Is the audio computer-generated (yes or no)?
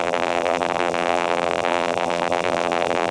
yes